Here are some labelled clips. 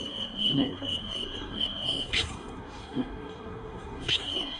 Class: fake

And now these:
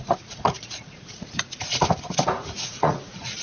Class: fake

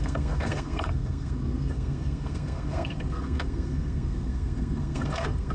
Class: fake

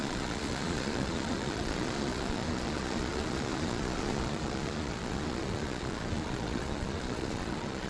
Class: fake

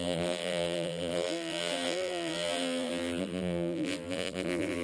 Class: fake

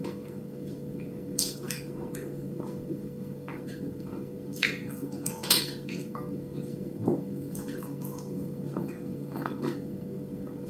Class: fake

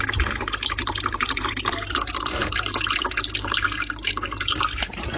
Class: fake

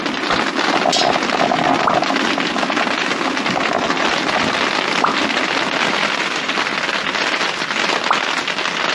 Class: real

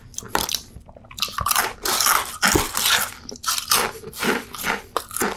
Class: fake